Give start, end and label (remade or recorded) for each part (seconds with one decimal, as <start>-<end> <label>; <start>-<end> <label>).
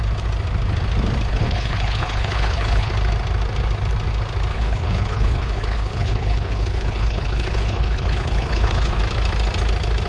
0.0-1.3 recorded; 1.3-2.9 remade; 2.9-4.5 recorded; 4.5-9.0 remade; 9.0-10.1 recorded